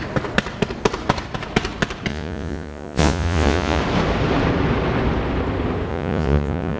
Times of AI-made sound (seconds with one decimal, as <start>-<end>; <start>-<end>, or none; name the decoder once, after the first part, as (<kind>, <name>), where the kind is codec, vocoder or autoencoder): 2.1-3.8 (vocoder, Vocos); 5.9-6.8